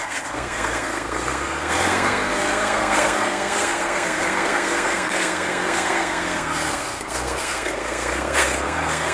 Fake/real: fake